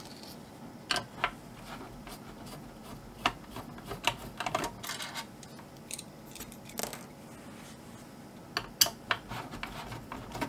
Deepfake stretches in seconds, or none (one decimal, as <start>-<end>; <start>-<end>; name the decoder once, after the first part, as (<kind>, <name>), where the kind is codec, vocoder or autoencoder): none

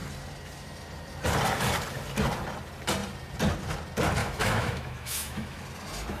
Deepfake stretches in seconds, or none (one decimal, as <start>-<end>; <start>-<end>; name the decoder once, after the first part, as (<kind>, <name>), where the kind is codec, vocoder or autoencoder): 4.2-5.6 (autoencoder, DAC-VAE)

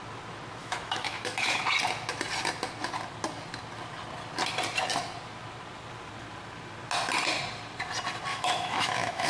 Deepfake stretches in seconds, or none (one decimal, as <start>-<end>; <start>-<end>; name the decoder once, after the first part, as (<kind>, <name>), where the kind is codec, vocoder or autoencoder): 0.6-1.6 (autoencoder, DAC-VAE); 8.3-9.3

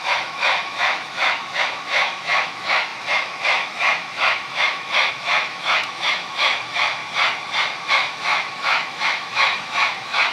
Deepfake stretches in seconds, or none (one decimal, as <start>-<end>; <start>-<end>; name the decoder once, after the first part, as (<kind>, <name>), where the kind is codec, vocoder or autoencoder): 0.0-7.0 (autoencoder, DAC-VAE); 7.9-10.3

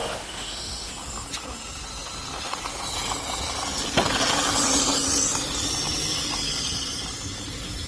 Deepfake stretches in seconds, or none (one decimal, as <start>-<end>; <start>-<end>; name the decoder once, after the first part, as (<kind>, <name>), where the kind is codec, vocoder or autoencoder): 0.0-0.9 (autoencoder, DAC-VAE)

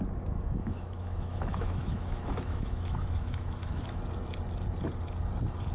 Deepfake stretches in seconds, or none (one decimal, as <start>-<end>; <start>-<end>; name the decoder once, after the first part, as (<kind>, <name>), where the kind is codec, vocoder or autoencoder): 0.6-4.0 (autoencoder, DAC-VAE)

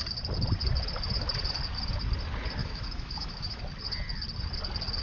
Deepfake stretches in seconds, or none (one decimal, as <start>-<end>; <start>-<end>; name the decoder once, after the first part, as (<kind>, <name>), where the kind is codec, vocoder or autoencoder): 2.6-3.6 (autoencoder, DAC-VAE)

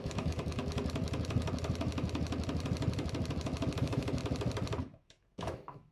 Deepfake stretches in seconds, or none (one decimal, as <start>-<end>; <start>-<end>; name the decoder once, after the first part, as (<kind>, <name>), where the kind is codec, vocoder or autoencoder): 0.0-0.6 (autoencoder, DAC-VAE); 3.8-4.2; 4.8-5.9